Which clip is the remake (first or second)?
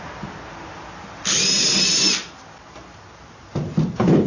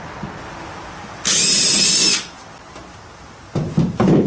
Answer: second